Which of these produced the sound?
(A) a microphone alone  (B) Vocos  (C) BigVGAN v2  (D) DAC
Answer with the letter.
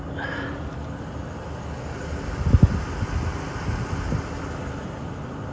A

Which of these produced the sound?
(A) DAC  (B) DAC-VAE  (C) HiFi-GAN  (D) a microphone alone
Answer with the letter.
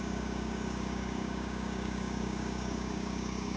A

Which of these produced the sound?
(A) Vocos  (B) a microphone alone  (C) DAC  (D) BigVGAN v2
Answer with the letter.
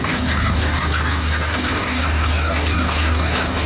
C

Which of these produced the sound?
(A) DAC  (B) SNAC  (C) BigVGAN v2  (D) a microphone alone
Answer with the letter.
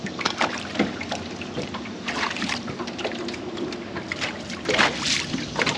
D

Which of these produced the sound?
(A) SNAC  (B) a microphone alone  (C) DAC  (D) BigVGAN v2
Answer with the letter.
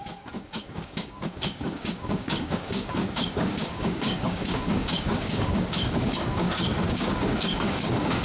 C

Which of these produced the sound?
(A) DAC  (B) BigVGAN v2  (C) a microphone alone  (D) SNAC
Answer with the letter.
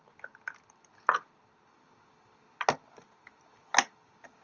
C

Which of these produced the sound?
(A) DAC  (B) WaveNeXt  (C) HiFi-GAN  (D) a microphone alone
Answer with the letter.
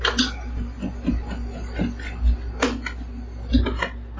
D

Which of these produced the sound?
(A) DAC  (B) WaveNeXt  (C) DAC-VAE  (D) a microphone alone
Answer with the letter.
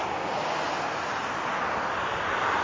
D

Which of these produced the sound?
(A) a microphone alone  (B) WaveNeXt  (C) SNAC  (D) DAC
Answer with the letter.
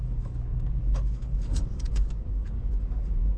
D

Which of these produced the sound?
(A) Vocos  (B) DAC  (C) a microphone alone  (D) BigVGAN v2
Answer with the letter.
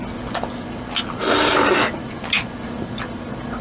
C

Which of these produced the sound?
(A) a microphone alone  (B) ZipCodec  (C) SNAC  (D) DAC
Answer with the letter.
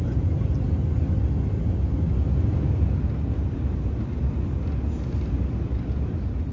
A